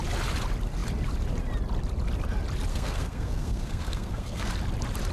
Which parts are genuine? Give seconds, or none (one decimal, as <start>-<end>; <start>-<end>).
0.0-2.7; 4.5-5.1

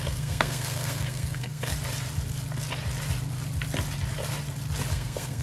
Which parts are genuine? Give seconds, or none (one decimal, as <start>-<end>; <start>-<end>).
1.7-4.9

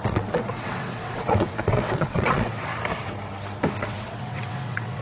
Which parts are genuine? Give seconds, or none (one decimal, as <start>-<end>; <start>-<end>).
2.7-3.7

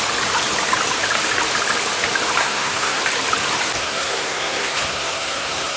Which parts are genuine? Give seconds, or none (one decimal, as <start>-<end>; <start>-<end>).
0.0-2.4; 3.0-3.8

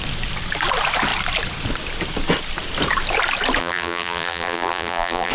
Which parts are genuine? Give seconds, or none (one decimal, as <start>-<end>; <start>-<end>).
0.0-3.6